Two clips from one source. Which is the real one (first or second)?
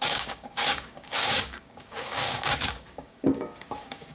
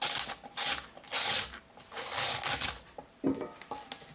second